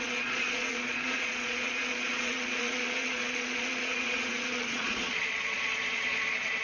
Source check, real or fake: fake